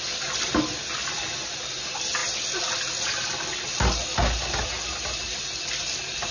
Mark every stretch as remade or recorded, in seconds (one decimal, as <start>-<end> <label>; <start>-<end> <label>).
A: 0.0-6.3 recorded